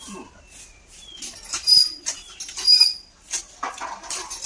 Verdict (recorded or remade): recorded